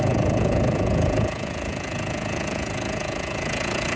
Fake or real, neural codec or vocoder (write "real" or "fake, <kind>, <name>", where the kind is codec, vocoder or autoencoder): fake, vocoder, Vocos